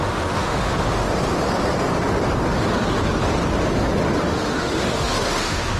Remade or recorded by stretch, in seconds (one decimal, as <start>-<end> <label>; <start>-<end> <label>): 0.0-0.7 remade; 0.7-4.2 recorded; 4.2-5.8 remade